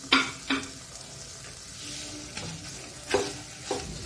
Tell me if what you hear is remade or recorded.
recorded